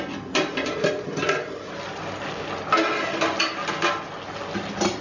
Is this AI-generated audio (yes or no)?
no